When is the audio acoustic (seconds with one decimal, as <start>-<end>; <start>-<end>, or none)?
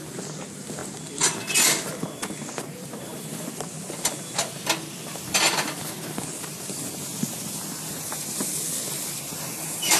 0.0-10.0